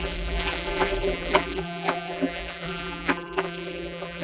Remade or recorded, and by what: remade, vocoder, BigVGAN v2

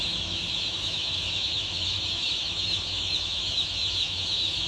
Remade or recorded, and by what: remade, autoencoder, DAC-VAE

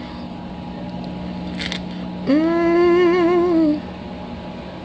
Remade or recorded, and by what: recorded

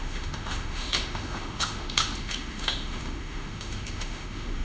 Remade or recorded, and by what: remade, autoencoder, DAC-VAE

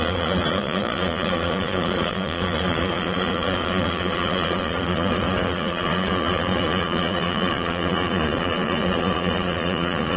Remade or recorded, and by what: remade, vocoder, Vocos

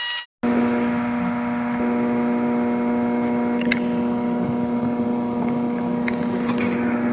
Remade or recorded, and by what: recorded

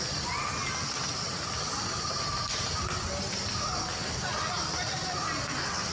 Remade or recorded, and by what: recorded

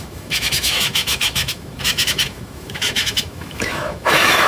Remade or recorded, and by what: remade, autoencoder, DAC-VAE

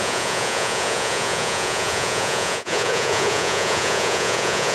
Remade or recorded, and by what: remade, vocoder, Vocos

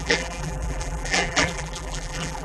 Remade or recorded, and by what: remade, vocoder, BigVGAN v2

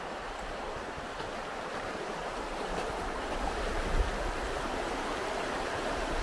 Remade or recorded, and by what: remade, vocoder, BigVGAN v2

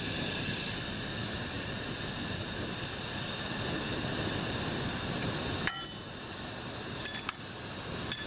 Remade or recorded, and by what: remade, vocoder, BigVGAN v2